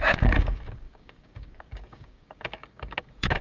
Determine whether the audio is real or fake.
fake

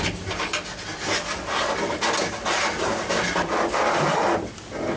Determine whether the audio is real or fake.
real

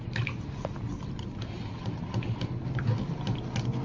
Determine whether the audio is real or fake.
real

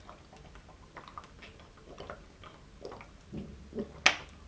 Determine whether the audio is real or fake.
real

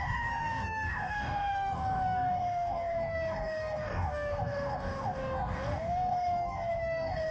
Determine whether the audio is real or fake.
fake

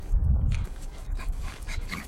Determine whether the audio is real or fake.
fake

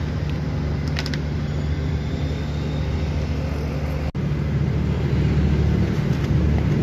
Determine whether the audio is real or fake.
real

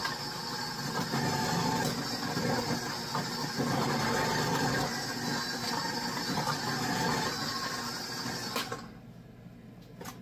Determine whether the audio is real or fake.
real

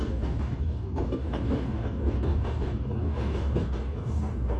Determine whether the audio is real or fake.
fake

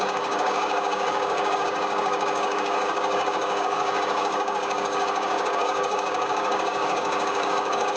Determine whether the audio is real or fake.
fake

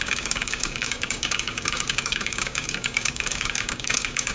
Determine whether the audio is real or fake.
fake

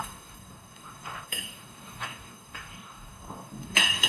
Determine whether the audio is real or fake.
fake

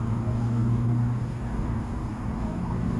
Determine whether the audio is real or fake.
fake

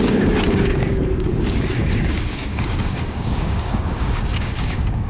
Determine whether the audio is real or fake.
fake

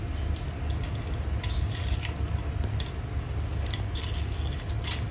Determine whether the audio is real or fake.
real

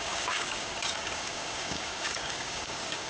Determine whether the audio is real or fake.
fake